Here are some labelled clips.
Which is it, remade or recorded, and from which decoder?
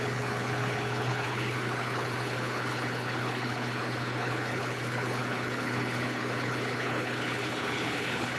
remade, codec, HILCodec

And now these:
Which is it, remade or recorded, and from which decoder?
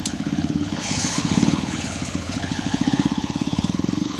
remade, codec, HILCodec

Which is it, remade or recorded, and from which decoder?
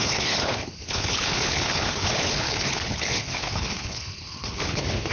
remade, codec, HILCodec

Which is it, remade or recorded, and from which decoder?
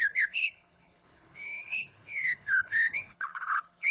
remade, codec, HILCodec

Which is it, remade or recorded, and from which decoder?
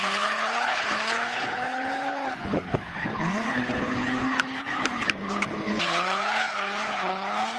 remade, codec, HILCodec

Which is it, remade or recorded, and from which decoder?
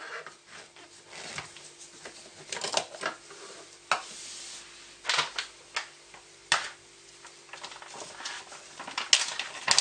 recorded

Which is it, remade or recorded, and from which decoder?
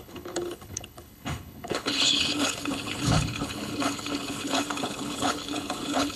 remade, codec, HILCodec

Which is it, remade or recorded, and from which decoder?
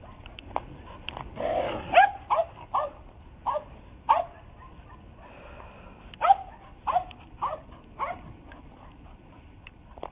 recorded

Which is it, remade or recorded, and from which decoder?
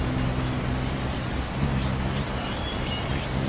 recorded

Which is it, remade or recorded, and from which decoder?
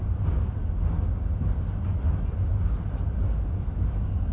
recorded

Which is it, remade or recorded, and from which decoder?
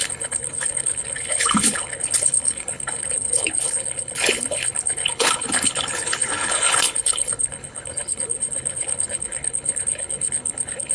remade, codec, HILCodec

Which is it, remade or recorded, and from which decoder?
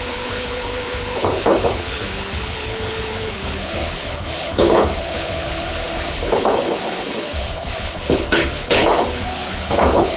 remade, codec, HILCodec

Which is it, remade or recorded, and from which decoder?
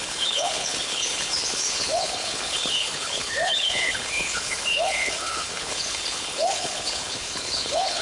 remade, codec, HILCodec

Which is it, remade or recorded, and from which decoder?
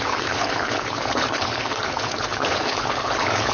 remade, codec, HILCodec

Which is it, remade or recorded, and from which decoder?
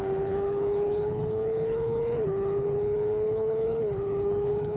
remade, codec, HILCodec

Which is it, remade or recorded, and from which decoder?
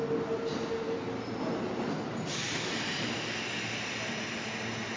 recorded